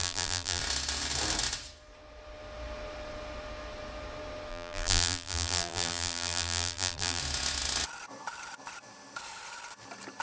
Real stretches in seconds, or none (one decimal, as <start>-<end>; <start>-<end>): 0.6-4.5; 7.2-10.2